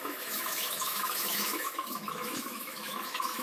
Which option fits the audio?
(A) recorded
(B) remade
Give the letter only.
B